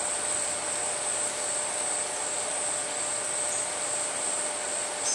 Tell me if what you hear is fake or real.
real